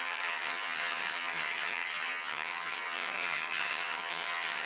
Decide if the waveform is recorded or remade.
remade